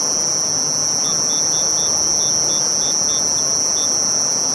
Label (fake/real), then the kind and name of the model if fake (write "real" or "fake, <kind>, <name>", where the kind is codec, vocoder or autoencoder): real